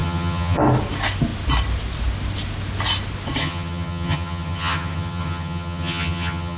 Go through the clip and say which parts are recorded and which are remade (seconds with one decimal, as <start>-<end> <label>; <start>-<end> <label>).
0.0-0.6 remade; 0.6-3.4 recorded; 3.4-6.6 remade